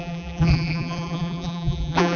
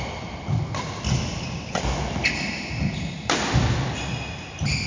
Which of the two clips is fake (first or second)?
first